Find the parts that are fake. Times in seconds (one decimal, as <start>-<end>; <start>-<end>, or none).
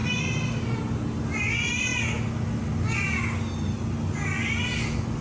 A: none